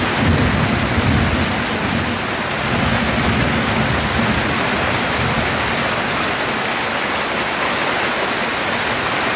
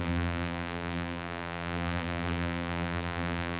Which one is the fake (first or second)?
second